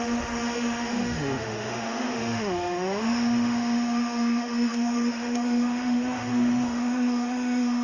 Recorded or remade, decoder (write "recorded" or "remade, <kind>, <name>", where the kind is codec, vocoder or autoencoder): remade, autoencoder, DAC-VAE